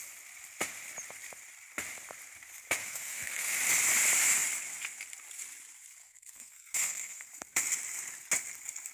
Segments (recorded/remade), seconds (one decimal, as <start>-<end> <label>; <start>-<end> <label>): 0.0-2.8 recorded; 2.8-3.5 remade; 3.5-6.0 recorded; 6.0-7.3 remade; 7.3-8.9 recorded